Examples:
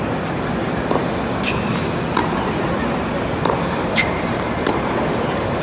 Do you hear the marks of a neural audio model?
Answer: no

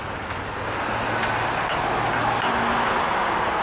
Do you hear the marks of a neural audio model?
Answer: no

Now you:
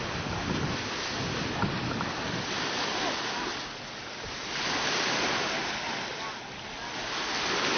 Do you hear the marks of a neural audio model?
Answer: no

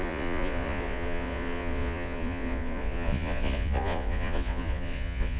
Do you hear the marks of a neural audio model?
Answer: yes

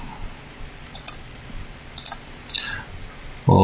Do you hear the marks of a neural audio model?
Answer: no